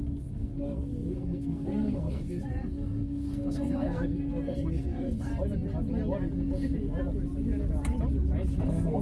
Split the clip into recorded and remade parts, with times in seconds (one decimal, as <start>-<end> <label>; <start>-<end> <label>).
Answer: 0.0-5.3 remade; 5.3-8.6 recorded; 8.6-9.0 remade